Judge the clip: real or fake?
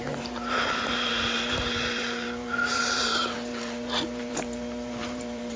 fake